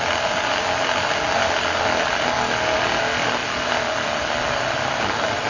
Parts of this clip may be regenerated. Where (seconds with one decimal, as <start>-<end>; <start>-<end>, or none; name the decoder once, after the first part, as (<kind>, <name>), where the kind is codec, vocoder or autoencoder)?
none